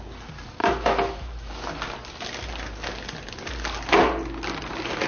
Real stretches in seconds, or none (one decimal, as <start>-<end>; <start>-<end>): 0.0-0.6; 1.5-5.1